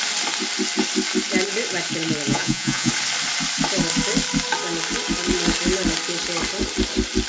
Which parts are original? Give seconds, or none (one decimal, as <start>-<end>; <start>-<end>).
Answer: 0.0-2.3; 2.9-7.3

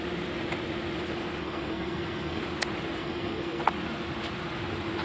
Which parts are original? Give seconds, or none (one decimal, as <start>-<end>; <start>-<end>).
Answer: 0.0-1.4; 2.4-3.0; 3.6-5.0

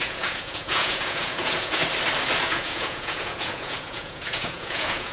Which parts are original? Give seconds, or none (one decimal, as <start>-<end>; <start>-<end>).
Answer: 1.8-2.4